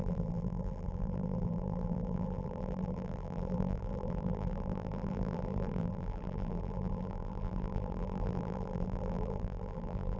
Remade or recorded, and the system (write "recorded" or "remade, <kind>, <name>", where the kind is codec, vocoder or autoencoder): remade, vocoder, BigVGAN v2